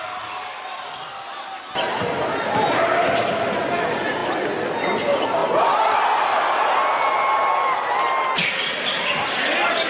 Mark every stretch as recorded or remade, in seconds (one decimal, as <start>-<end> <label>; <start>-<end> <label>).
0.0-9.9 recorded